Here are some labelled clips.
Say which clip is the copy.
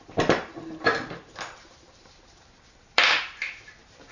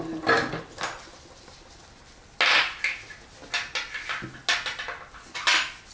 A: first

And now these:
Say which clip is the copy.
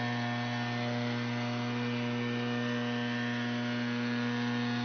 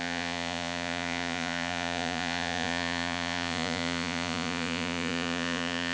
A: second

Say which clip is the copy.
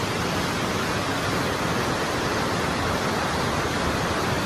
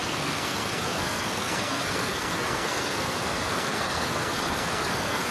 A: second